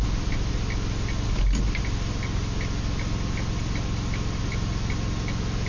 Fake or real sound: real